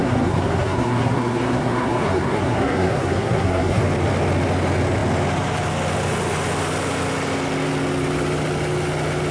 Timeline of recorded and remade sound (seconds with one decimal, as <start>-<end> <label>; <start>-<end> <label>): 0.0-3.8 remade; 3.8-9.3 recorded

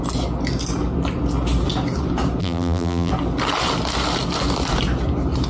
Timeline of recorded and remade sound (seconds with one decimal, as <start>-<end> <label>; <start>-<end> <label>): 0.0-2.4 recorded; 2.4-3.1 remade; 3.1-5.5 recorded

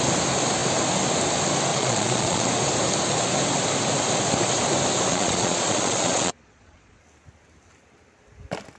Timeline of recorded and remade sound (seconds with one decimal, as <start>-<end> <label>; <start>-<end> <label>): 0.0-1.7 recorded; 1.7-2.5 remade; 2.5-5.1 recorded; 5.1-7.0 remade; 7.0-8.8 recorded

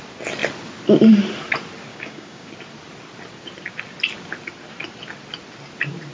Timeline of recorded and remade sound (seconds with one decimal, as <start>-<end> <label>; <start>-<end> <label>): 0.0-1.9 recorded; 1.9-2.5 remade; 2.5-6.1 recorded

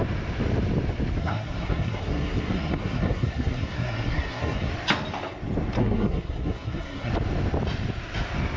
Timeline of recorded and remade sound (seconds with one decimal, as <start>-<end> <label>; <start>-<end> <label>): 0.0-1.2 recorded; 1.2-4.7 remade; 4.7-5.8 recorded; 5.8-7.1 remade; 7.1-8.6 recorded

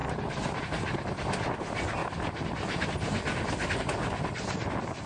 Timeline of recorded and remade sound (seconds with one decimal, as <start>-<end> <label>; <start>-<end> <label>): 0.0-5.1 recorded